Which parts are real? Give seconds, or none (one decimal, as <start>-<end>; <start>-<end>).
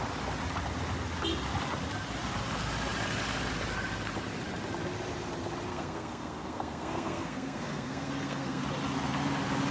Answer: 0.0-5.7; 8.6-9.7